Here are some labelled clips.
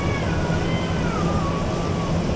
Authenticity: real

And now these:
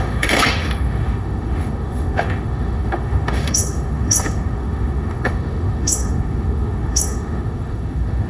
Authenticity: fake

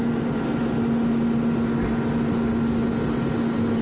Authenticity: real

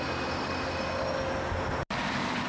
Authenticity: real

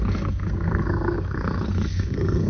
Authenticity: fake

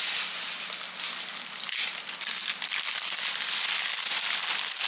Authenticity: real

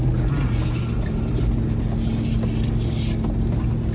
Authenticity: real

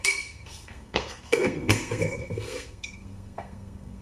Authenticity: fake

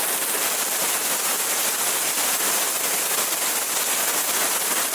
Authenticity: real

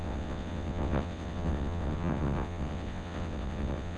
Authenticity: fake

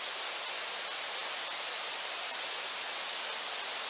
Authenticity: real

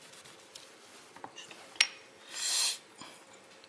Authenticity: real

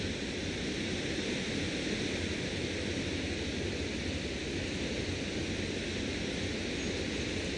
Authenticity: real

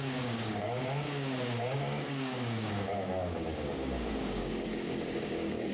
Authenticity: fake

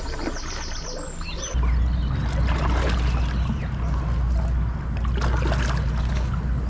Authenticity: real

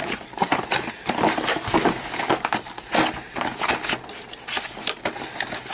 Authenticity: real